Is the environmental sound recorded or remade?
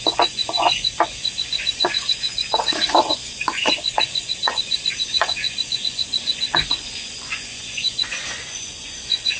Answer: remade